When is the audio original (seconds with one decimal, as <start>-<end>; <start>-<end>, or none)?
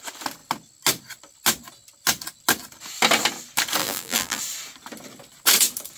0.0-3.8; 4.4-6.0